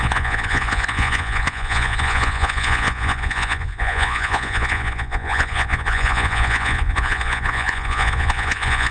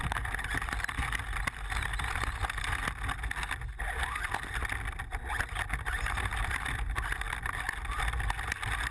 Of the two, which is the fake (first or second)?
first